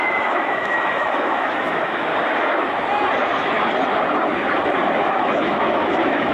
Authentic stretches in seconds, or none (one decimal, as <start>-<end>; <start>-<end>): 2.1-5.0